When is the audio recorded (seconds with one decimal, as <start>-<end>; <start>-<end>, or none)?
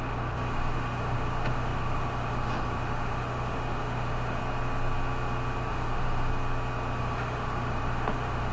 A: 4.4-5.7; 6.3-7.0